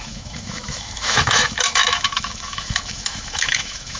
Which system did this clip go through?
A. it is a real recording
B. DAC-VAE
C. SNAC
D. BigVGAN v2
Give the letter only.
B